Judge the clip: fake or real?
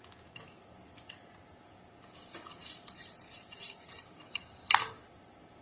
real